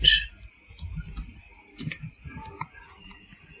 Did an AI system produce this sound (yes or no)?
no